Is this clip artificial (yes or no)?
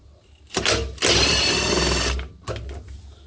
no